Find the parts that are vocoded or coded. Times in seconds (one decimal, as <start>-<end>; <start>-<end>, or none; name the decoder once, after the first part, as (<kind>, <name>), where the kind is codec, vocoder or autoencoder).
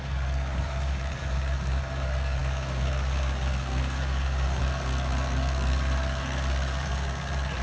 0.0-7.6 (codec, DAC)